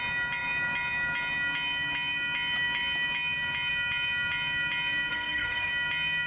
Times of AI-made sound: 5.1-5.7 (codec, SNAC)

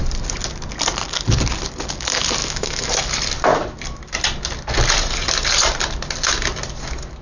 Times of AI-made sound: 2.4-2.9 (autoencoder, DAC-VAE)